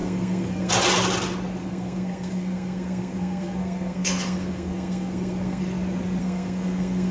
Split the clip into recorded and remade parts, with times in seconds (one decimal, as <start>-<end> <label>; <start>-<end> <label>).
0.0-0.7 remade; 0.7-1.6 recorded; 1.6-5.6 remade; 5.6-6.2 recorded; 6.2-7.1 remade